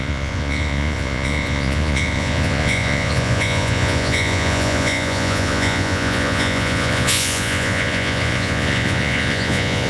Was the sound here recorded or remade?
remade